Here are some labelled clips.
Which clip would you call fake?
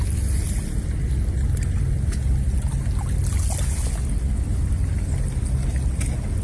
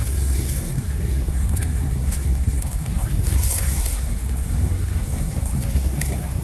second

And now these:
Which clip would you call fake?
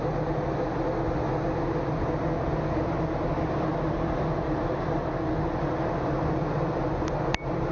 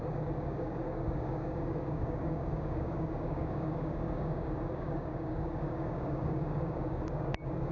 second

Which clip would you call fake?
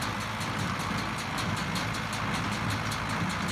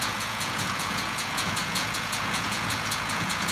second